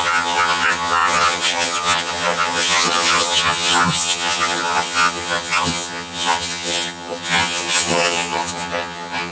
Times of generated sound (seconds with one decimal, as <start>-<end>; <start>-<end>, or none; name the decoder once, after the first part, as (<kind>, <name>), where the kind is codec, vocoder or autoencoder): 0.0-9.3 (vocoder, HiFi-GAN)